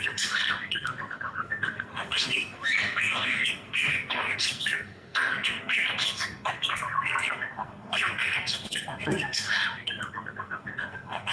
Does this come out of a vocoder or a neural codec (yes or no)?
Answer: yes